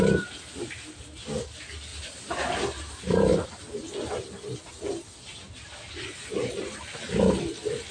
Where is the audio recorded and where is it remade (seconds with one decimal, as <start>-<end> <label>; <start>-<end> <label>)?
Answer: 0.0-7.9 recorded